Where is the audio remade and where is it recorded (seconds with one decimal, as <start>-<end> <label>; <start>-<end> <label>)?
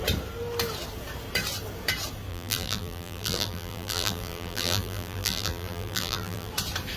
0.0-2.3 recorded; 2.3-6.5 remade; 6.5-7.0 recorded